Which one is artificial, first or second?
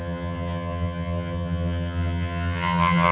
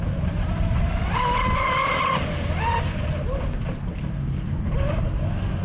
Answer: first